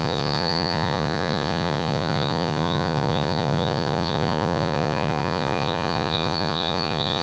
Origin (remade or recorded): remade